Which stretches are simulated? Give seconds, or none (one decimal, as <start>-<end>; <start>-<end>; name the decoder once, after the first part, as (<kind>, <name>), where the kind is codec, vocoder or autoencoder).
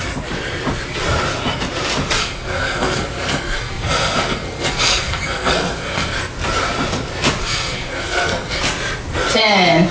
2.2-6.2 (codec, SNAC); 7.4-8.6